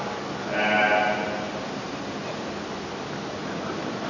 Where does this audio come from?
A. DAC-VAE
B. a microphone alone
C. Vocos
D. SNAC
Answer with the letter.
B